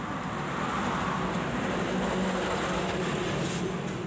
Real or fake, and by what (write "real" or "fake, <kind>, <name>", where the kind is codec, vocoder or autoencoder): real